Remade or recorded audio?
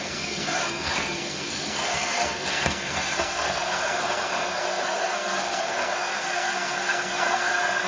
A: remade